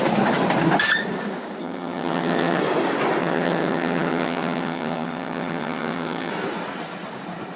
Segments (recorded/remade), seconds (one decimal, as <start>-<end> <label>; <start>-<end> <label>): 0.0-1.6 recorded; 1.6-2.6 remade; 2.6-3.2 recorded; 3.2-6.3 remade; 6.3-7.6 recorded